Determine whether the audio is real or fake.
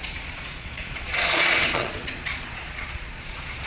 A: fake